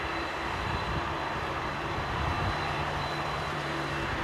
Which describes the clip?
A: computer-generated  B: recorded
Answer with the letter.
A